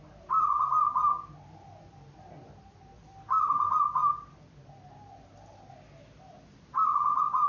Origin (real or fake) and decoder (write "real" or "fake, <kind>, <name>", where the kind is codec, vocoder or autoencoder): real